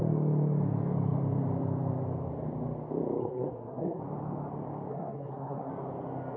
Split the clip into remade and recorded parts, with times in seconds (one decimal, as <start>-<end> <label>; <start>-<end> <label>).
0.0-3.2 recorded; 3.2-4.0 remade; 4.0-4.9 recorded; 4.9-5.7 remade; 5.7-6.4 recorded